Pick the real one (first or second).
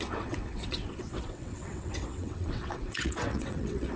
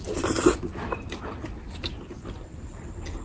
second